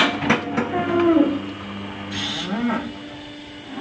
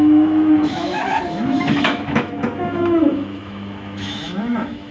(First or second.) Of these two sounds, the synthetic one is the second